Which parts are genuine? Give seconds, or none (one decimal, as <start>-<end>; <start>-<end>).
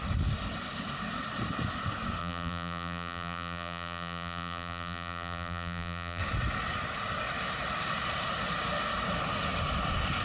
0.0-2.2; 6.2-10.2